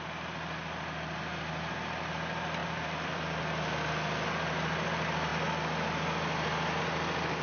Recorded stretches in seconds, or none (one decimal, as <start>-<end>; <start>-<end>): 0.0-2.6; 3.4-7.4